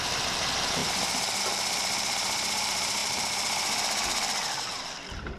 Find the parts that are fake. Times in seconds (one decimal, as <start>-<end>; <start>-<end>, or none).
0.0-0.8; 1.4-5.4